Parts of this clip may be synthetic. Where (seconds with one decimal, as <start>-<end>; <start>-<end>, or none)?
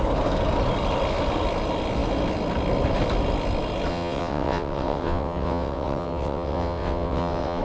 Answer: 3.9-7.6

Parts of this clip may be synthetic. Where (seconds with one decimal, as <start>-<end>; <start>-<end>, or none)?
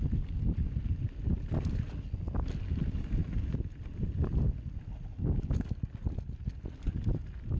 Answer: none